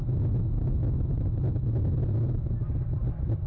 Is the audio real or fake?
real